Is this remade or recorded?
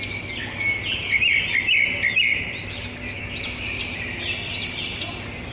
recorded